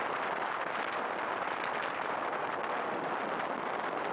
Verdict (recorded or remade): recorded